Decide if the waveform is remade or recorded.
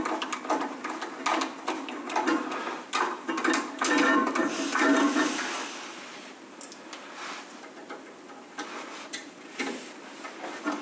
recorded